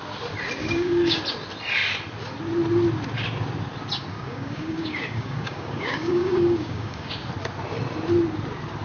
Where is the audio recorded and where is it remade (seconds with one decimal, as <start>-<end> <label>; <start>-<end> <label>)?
0.0-0.6 recorded; 0.6-1.2 remade; 1.2-4.1 recorded; 4.1-7.2 remade; 7.2-8.8 recorded